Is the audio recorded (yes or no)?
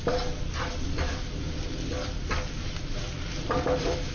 yes